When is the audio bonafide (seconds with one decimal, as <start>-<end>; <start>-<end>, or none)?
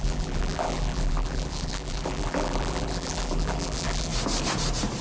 4.1-5.0